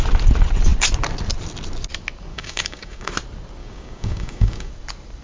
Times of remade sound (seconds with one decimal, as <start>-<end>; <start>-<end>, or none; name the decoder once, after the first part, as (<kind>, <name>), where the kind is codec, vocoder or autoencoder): 2.3-3.1 (codec, DAC); 3.6-4.7